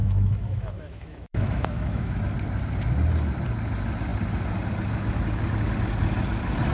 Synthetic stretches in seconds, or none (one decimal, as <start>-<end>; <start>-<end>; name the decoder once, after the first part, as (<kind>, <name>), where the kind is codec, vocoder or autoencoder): 0.0-2.2 (autoencoder, DAC-VAE)